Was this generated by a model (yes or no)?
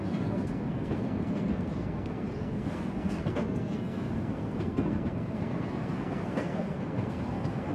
yes